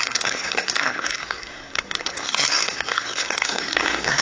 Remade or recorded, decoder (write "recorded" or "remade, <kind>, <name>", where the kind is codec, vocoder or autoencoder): remade, codec, SNAC